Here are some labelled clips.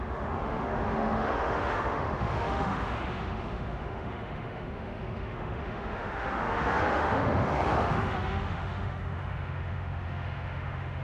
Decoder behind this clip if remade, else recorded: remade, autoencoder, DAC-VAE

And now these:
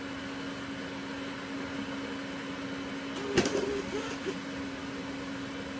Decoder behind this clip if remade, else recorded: recorded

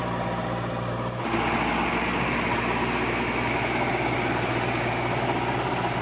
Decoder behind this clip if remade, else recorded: recorded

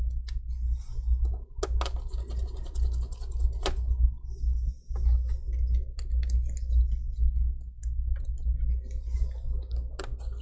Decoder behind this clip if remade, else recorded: recorded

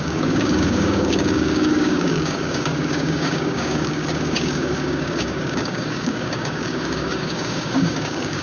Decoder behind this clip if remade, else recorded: remade, codec, DAC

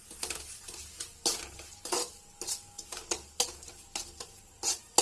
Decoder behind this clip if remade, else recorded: recorded